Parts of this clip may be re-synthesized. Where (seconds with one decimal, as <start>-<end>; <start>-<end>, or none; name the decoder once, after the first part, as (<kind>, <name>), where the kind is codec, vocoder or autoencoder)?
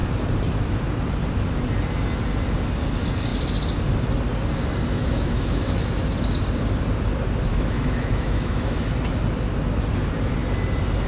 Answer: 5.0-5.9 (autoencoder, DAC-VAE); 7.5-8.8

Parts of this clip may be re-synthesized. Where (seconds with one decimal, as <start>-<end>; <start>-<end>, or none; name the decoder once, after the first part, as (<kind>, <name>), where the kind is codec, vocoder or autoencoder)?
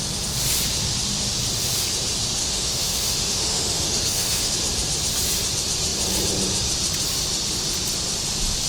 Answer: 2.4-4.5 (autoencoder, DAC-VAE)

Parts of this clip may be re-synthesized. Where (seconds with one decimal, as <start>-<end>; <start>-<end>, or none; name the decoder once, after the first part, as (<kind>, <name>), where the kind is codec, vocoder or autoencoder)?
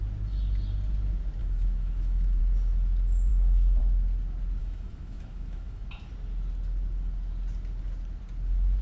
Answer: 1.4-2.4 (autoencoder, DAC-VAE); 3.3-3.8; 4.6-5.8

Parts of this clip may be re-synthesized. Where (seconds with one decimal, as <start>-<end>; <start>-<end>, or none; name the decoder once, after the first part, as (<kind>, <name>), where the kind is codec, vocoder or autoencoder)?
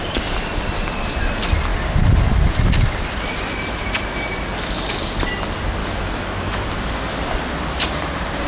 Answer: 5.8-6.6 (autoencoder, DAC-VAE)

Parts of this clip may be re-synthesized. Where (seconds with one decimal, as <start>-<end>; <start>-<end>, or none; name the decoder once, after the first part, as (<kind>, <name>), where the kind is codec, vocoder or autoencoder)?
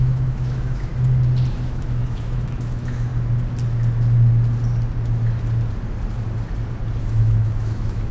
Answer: 0.0-0.9 (autoencoder, DAC-VAE); 1.5-3.1; 7.0-8.1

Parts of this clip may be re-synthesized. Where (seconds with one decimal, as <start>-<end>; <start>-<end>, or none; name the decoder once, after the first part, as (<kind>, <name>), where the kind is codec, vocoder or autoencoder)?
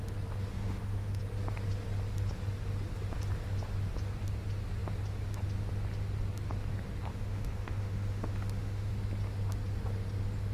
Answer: 0.5-1.2 (autoencoder, DAC-VAE); 7.1-8.9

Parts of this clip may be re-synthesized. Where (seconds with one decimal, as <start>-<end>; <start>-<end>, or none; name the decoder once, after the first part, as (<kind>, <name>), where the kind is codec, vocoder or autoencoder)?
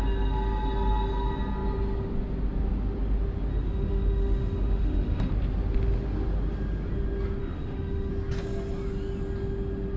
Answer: 3.5-5.3 (autoencoder, DAC-VAE); 7.4-8.1